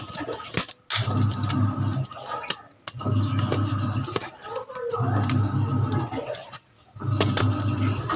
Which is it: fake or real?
real